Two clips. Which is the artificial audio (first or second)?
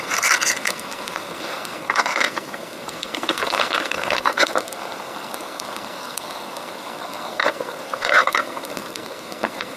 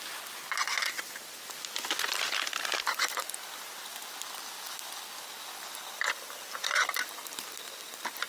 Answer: first